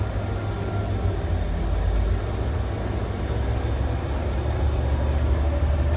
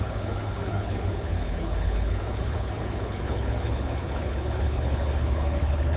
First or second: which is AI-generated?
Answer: second